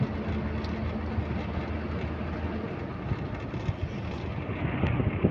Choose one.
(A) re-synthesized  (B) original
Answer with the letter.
B